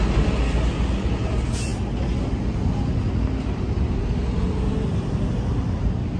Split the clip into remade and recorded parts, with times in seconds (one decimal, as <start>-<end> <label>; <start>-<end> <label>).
0.0-6.2 recorded